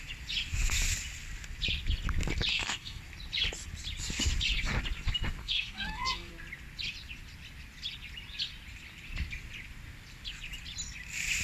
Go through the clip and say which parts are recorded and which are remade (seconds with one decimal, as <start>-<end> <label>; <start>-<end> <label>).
0.0-2.5 recorded; 2.5-3.0 remade; 3.0-5.4 recorded; 5.4-6.3 remade; 6.3-11.4 recorded